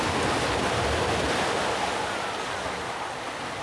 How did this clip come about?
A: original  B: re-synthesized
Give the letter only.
A